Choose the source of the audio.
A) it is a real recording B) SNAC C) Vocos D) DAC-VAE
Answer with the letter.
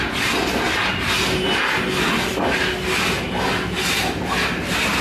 A